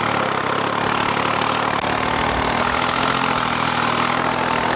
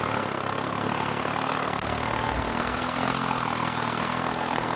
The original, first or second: first